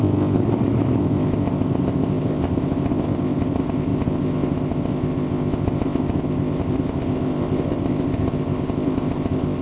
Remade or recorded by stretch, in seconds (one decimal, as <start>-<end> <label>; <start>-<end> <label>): 0.0-0.4 remade; 0.4-1.0 recorded; 1.0-9.6 remade